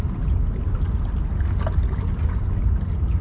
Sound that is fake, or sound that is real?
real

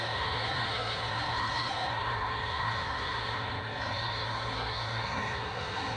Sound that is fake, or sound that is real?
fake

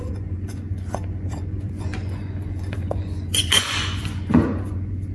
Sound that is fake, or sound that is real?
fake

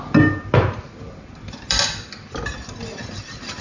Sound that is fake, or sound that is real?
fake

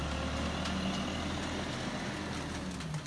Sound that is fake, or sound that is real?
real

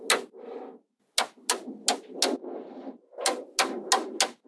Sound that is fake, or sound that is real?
real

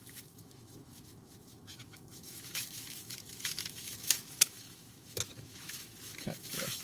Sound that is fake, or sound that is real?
fake